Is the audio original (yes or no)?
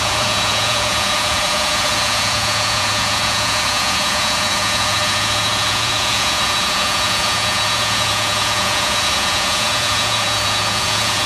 no